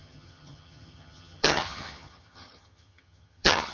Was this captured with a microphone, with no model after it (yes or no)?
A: no